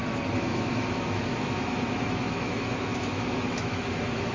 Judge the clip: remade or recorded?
remade